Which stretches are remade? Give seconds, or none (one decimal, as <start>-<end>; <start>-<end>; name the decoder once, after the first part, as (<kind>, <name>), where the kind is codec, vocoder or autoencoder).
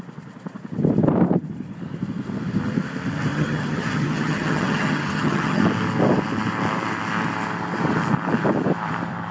3.3-5.6 (vocoder, HiFi-GAN)